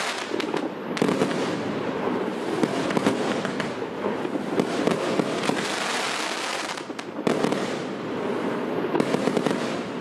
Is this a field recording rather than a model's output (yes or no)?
yes